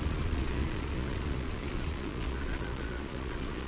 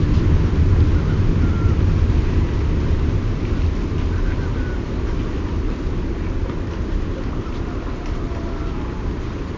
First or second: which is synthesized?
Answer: first